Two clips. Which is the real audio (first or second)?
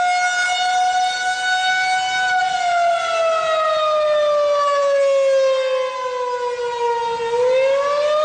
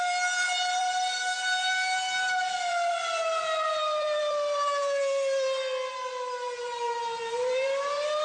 first